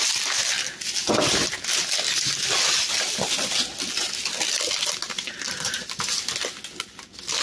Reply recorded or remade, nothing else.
recorded